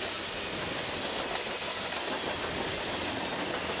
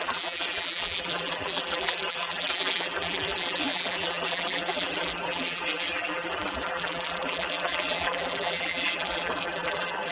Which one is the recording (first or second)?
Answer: first